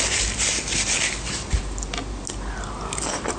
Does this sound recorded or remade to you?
recorded